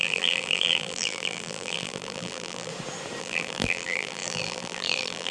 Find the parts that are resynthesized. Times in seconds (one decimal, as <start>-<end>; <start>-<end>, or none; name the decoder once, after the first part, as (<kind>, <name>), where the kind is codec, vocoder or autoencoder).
0.0-2.7 (vocoder, BigVGAN v2); 3.2-5.3